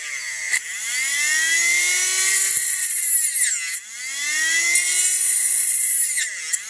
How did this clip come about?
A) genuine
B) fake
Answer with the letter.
A